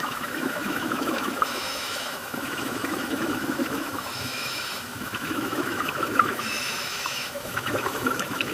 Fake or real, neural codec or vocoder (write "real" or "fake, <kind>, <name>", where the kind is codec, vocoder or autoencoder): fake, autoencoder, DAC-VAE